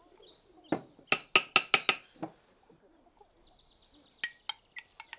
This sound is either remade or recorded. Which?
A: recorded